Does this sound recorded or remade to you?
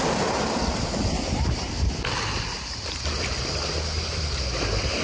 recorded